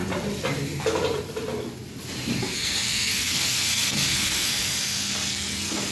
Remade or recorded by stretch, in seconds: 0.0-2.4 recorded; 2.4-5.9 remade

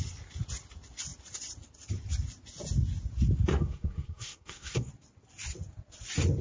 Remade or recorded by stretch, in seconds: 0.0-3.5 recorded; 3.5-4.9 remade; 4.9-6.4 recorded

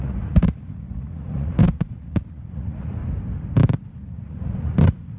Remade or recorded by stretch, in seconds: 0.0-3.0 remade; 3.0-4.1 recorded; 4.1-5.2 remade